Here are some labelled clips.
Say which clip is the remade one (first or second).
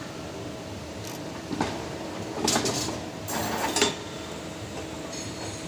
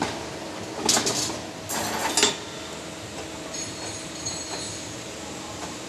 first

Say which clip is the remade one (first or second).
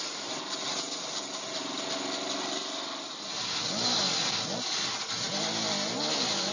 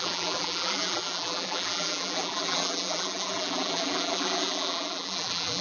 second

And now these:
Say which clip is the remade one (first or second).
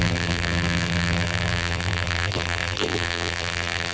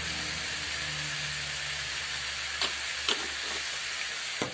first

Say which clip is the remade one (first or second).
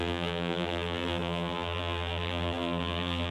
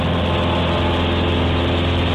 first